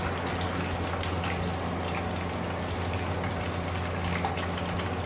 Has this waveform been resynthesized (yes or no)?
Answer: no